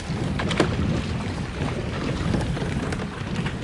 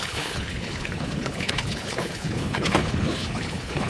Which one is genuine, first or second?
first